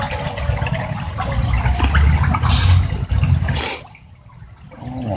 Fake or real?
real